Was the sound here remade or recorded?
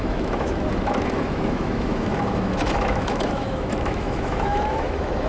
remade